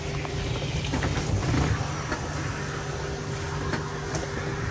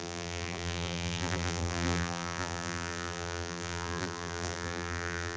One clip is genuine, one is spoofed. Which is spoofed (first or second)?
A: second